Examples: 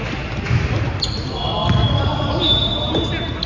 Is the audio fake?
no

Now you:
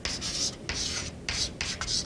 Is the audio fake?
no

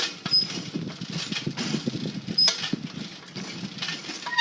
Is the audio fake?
no